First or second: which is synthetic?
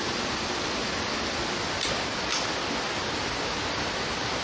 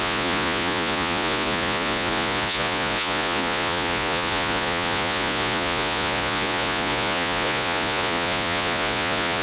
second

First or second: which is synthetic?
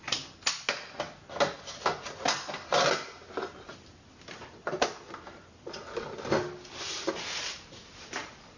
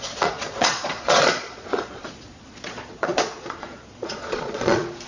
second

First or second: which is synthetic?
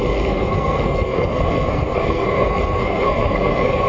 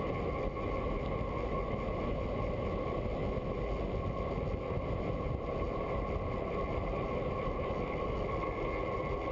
first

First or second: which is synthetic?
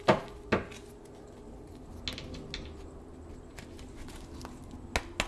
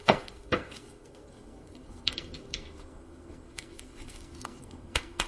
second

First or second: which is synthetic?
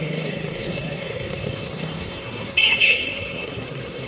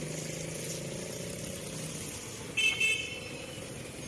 first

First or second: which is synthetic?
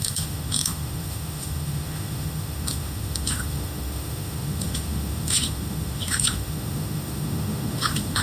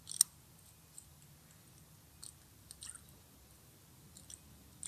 first